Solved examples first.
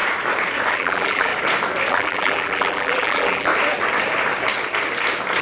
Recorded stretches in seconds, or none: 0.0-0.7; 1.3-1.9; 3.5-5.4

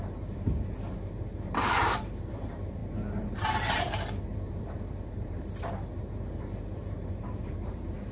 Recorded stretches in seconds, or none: none

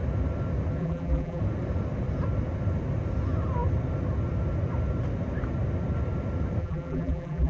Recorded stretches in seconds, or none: 0.0-0.8; 1.4-6.6

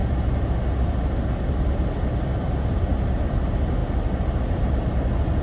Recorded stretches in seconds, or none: 0.0-5.4

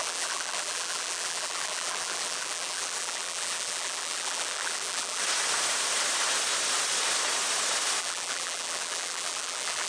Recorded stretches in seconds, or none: 5.2-8.0

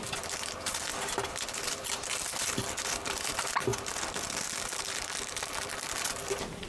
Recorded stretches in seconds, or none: 3.7-5.5

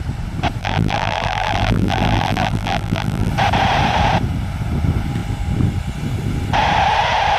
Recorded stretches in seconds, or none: 0.0-0.6; 3.3-7.4

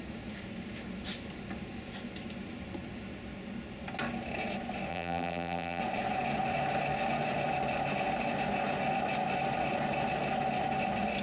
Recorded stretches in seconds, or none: 0.0-4.9; 5.8-11.2